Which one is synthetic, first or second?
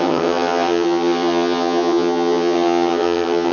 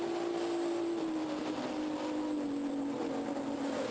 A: first